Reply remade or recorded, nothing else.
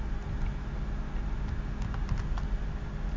recorded